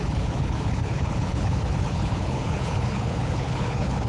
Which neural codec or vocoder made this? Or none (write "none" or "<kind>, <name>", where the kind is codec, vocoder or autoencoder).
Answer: codec, HILCodec